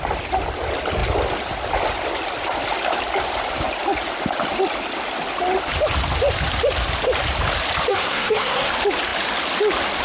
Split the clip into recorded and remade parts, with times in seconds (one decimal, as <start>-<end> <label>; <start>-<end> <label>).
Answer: 0.0-7.9 recorded; 7.9-8.7 remade; 8.7-10.0 recorded

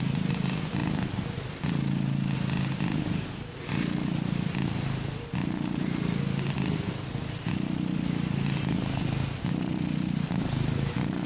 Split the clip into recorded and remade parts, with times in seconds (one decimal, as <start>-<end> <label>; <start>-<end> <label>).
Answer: 0.0-11.3 recorded

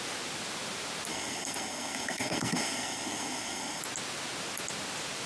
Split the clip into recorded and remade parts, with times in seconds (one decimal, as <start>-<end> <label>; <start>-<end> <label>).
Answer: 0.0-1.1 recorded; 1.1-3.8 remade; 3.8-5.3 recorded

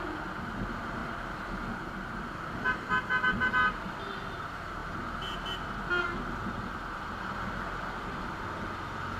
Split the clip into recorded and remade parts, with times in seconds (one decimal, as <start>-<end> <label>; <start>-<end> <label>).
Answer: 0.0-9.2 recorded

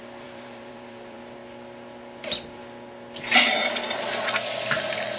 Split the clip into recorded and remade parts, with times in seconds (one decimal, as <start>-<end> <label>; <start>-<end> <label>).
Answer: 0.0-1.4 remade; 1.4-2.2 recorded; 2.2-2.6 remade; 2.6-4.2 recorded; 4.2-5.2 remade

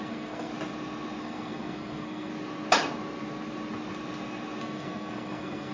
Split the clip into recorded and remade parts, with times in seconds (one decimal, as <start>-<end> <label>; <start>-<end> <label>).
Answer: 0.0-0.5 remade; 0.5-1.2 recorded; 1.2-2.3 remade; 2.3-4.6 recorded; 4.6-5.7 remade

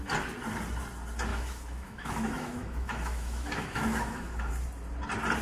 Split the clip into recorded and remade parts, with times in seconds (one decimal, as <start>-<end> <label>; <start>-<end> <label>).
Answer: 0.0-1.3 recorded; 1.3-4.5 remade; 4.5-5.4 recorded

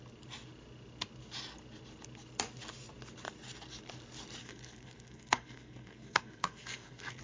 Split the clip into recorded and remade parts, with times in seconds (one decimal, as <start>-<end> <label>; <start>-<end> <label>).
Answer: 0.0-4.4 recorded; 4.4-7.2 remade